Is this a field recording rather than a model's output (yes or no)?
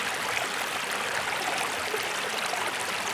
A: yes